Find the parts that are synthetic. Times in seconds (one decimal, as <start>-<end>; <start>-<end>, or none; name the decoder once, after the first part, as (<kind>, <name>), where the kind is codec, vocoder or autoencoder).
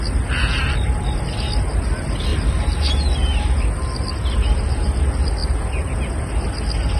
none